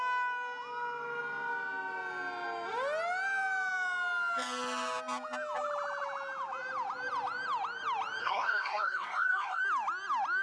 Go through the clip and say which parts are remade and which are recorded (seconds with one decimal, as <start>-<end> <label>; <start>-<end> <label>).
0.0-8.2 recorded; 8.2-9.6 remade; 9.6-10.4 recorded